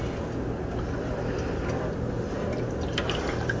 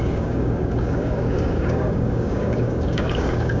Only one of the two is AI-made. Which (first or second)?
second